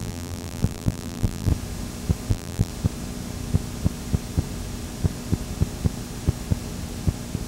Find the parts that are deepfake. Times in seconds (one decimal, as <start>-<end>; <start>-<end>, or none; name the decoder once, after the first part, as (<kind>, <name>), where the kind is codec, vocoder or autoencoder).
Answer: 0.0-1.5 (vocoder, BigVGAN v2); 2.3-2.7